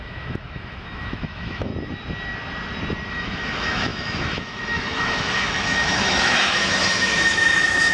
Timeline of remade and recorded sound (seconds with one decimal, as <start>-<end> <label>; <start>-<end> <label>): 0.0-1.7 remade; 1.7-3.1 recorded; 3.1-7.9 remade